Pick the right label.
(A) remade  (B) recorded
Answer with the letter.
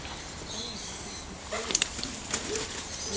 A